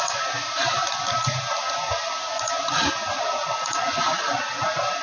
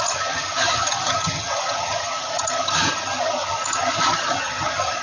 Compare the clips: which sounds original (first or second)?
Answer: first